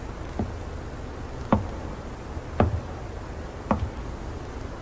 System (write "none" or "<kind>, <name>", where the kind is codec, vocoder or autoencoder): none